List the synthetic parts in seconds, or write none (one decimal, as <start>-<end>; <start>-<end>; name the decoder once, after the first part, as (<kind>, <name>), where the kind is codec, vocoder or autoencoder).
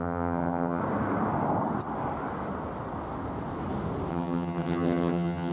0.0-0.8 (vocoder, HiFi-GAN); 4.1-5.5